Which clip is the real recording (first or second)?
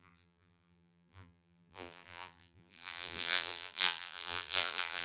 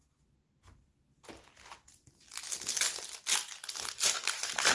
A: second